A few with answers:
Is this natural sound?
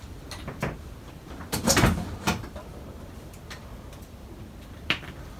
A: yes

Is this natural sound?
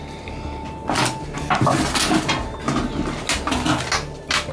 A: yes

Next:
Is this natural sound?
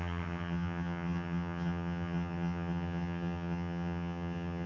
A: no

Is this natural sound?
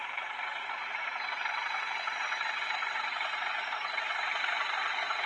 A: no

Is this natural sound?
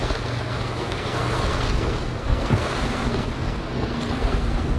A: no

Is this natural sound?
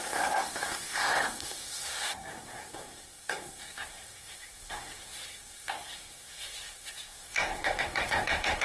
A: no